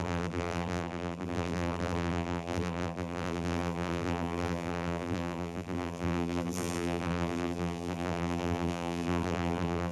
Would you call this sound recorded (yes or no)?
no